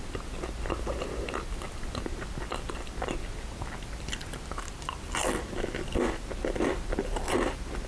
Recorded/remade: recorded